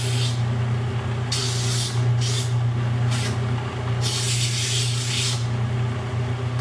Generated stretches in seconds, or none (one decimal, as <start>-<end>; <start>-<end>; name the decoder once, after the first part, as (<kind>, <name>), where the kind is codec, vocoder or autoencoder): none